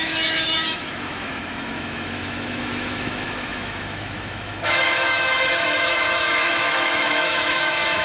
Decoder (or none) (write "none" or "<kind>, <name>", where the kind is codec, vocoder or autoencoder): autoencoder, DAC-VAE